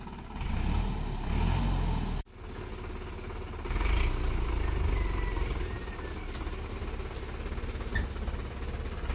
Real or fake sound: real